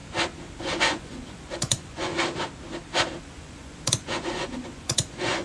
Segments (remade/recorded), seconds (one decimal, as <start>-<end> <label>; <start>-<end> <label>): 0.0-0.6 recorded; 0.6-2.1 remade; 2.1-3.2 recorded; 3.2-5.4 remade